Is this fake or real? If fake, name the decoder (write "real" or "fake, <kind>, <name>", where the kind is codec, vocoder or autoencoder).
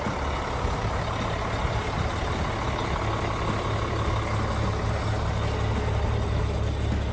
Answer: real